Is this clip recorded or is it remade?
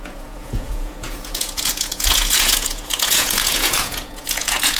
remade